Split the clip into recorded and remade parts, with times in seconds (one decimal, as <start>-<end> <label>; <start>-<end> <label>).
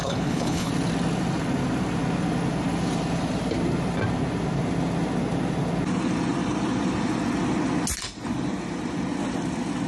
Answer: 0.0-0.7 remade; 0.7-9.9 recorded